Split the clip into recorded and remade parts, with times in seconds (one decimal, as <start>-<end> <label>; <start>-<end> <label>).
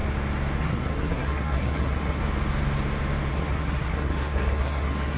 0.0-0.6 recorded; 0.6-2.2 remade; 2.2-3.3 recorded; 3.3-5.2 remade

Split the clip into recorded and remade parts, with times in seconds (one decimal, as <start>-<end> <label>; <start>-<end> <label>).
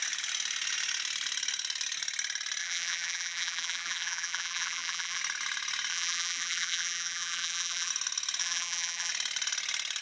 0.0-2.6 recorded; 2.6-5.2 remade; 5.2-5.9 recorded; 5.9-7.9 remade; 7.9-8.4 recorded; 8.4-9.1 remade; 9.1-10.0 recorded